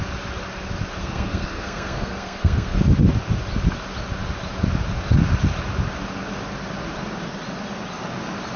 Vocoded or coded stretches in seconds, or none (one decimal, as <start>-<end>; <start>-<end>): 1.0-2.8

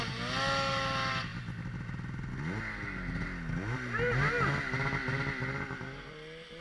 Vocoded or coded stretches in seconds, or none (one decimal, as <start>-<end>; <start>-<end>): none

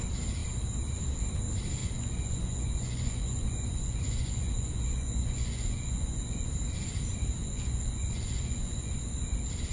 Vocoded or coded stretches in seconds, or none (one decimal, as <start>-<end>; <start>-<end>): 1.8-6.5; 7.4-8.9

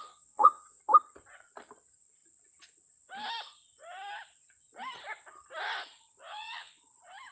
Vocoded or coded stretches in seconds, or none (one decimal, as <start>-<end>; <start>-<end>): 0.0-0.8; 6.3-6.8

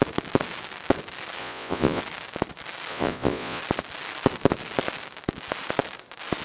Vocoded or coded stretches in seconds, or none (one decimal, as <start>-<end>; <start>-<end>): 1.4-2.0; 2.9-3.6

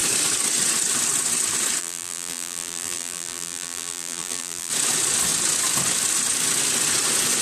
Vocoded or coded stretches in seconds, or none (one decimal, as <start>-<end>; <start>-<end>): 1.8-4.7